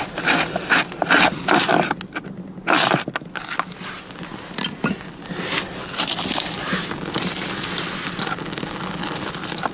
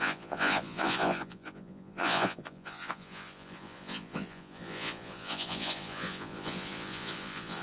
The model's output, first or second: second